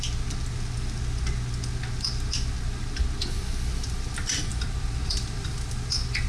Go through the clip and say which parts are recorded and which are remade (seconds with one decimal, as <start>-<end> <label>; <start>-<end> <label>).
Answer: 0.0-4.5 recorded; 4.5-5.5 remade; 5.5-6.3 recorded